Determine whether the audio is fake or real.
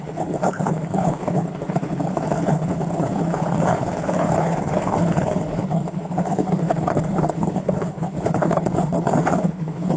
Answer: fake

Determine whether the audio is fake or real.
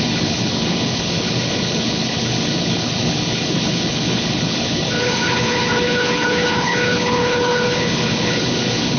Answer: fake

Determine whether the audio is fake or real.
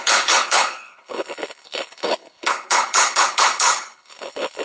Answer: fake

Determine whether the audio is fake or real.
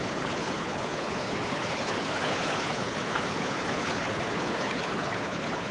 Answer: fake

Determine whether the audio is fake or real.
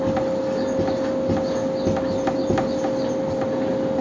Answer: real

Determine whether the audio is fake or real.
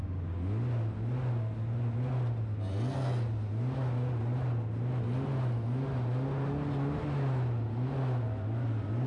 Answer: real